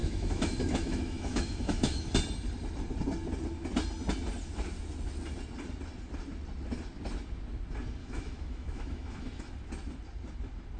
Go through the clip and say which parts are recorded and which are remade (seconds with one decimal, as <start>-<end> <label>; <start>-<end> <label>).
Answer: 0.0-2.1 remade; 2.1-8.0 recorded; 8.0-9.5 remade; 9.5-10.8 recorded